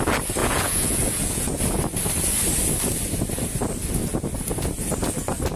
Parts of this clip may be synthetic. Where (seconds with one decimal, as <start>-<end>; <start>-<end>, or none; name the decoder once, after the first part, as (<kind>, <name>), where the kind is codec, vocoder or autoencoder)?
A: 0.4-1.6 (vocoder, Vocos)